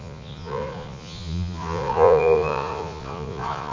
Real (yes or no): no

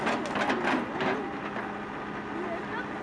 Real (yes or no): yes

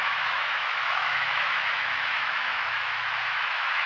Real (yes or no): no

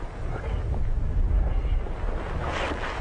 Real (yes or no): yes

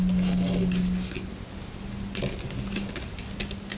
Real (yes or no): yes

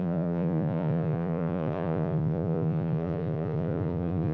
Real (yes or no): no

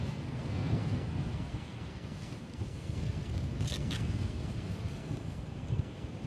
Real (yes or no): no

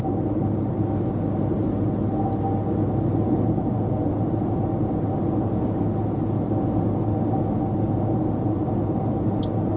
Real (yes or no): yes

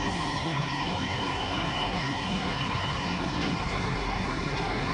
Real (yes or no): no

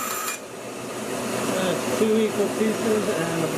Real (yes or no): yes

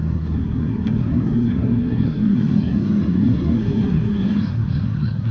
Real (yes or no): no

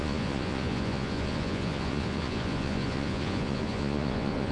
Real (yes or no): no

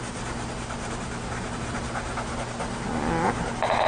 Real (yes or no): yes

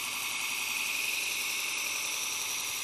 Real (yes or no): yes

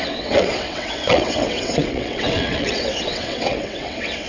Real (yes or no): no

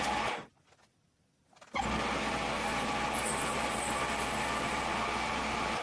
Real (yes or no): yes